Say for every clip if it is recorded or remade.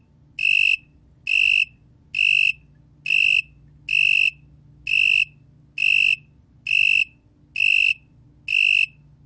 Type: recorded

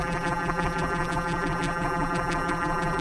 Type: remade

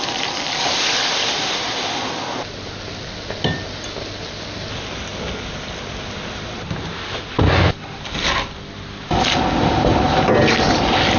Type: recorded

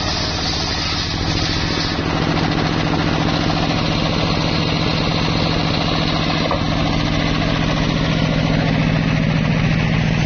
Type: recorded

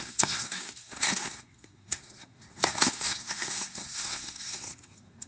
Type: remade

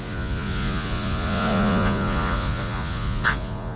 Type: remade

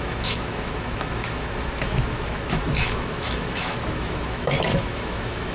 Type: remade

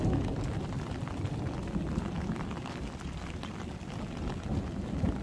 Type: recorded